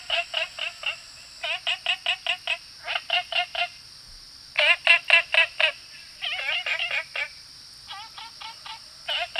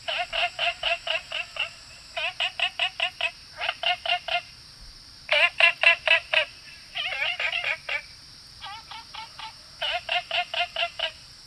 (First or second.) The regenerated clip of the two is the second